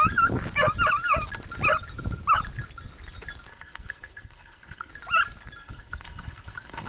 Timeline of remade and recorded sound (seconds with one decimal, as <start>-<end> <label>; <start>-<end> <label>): 0.0-3.5 recorded; 3.5-4.9 remade; 4.9-5.6 recorded; 5.6-6.9 remade